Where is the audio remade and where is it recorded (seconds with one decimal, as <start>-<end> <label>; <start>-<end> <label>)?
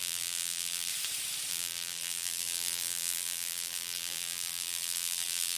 0.0-0.9 remade; 0.9-1.5 recorded; 1.5-5.6 remade